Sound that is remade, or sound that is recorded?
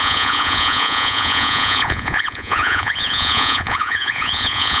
remade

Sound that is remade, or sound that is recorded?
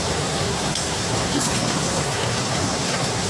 remade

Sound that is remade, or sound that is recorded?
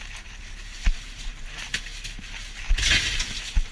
recorded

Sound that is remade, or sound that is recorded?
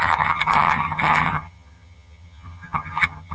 remade